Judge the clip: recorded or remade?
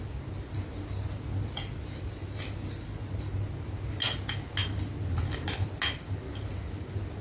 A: recorded